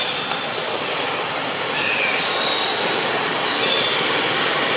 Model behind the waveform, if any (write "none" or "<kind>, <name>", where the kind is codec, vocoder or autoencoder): none